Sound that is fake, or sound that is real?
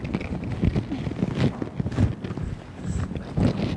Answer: real